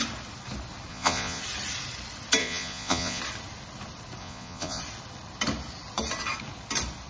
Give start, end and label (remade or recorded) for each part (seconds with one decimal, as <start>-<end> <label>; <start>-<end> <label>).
0.0-0.9 recorded; 0.9-1.4 remade; 1.4-2.4 recorded; 2.4-3.2 remade; 3.2-4.2 recorded; 4.2-4.8 remade; 4.8-7.1 recorded

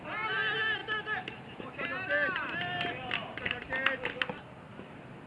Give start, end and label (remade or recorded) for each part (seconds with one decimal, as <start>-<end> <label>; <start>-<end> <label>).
0.0-5.3 recorded

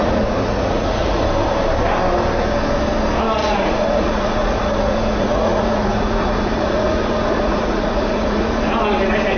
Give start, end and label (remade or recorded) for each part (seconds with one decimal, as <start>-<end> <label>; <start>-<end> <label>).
0.0-1.2 remade; 1.2-3.4 recorded; 3.4-8.6 remade; 8.6-9.4 recorded

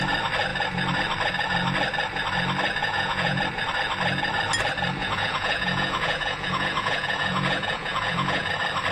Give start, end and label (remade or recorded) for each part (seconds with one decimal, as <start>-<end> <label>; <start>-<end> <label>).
0.0-2.8 recorded; 2.8-3.4 remade; 3.4-5.0 recorded; 5.0-8.5 remade; 8.5-8.9 recorded

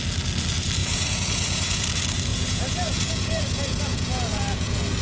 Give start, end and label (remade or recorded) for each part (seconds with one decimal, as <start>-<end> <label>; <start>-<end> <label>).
0.0-0.8 recorded; 0.8-1.8 remade; 1.8-2.3 recorded; 2.3-5.0 remade